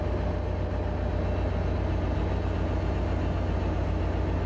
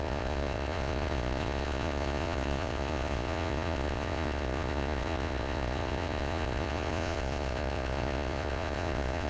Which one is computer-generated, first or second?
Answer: second